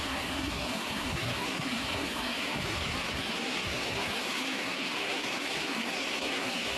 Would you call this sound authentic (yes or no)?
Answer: no